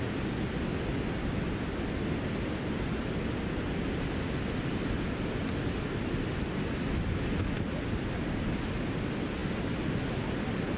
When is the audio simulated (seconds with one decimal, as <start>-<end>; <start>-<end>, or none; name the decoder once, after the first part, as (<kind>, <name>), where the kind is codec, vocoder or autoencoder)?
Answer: none